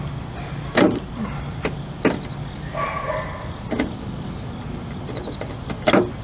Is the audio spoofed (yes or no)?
no